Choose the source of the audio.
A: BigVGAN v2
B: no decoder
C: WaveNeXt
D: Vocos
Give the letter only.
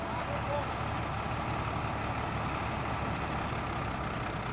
B